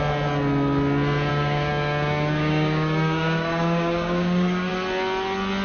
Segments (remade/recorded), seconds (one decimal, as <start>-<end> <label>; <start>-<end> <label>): 0.0-1.3 recorded; 1.3-4.7 remade; 4.7-5.6 recorded